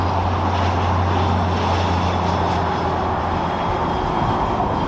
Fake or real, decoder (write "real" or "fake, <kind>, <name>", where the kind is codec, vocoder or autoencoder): real